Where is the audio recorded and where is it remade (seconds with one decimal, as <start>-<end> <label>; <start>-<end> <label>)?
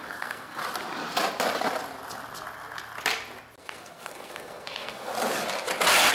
0.0-0.6 remade; 0.6-3.6 recorded; 3.6-5.1 remade; 5.1-6.1 recorded